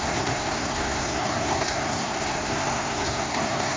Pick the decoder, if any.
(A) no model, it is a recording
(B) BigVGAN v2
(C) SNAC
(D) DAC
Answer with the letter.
C